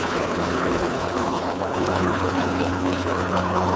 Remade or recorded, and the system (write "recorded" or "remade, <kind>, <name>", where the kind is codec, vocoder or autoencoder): remade, codec, HILCodec